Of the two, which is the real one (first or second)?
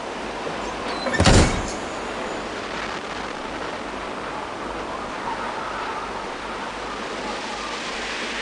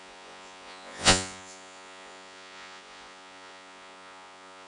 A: first